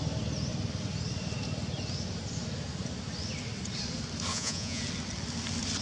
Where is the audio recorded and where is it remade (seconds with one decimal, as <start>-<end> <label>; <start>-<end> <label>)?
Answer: 0.0-4.3 recorded; 4.3-4.8 remade; 4.8-5.8 recorded